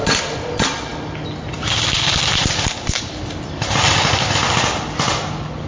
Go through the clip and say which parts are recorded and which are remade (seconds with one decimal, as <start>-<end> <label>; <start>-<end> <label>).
0.0-5.7 recorded